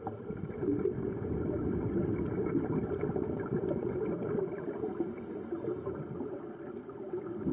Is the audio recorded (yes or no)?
yes